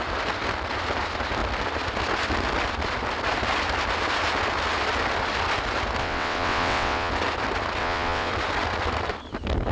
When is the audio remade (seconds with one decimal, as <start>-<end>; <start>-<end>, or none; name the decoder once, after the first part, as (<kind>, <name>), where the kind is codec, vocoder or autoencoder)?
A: 6.0-7.1 (vocoder, WaveNeXt); 7.8-8.3